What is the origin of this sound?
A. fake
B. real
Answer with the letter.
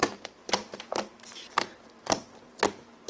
A